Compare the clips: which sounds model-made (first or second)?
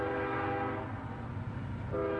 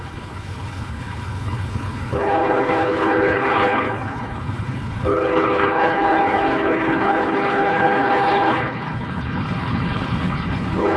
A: second